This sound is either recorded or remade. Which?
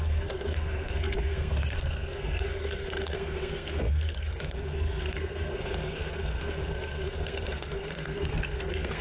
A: remade